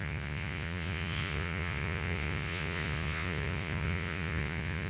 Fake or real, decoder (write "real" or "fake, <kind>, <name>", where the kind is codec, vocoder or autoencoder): fake, vocoder, Vocos